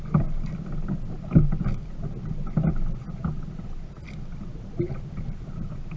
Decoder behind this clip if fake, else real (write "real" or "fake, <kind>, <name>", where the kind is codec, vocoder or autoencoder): real